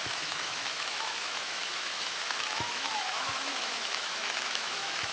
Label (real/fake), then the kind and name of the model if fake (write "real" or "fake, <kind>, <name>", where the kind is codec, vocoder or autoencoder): fake, autoencoder, DAC-VAE